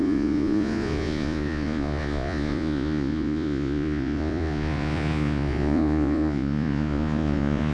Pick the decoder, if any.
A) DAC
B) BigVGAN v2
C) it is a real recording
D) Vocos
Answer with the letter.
D